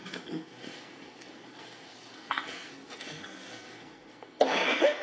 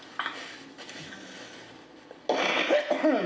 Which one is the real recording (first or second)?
second